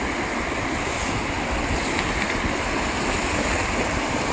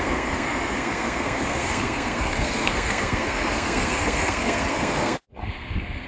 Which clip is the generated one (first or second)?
second